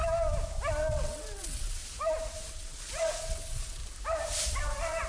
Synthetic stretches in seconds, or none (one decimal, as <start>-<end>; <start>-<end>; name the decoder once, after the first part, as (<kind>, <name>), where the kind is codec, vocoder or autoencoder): 0.9-1.8 (vocoder, WaveNeXt); 2.5-3.8